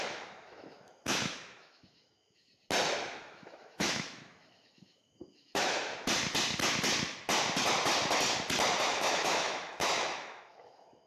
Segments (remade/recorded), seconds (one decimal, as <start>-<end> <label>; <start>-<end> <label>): 0.0-2.5 remade; 2.5-3.1 recorded; 3.1-5.9 remade; 5.9-8.8 recorded; 8.8-11.1 remade